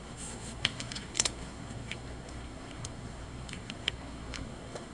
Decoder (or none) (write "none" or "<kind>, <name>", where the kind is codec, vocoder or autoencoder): codec, SNAC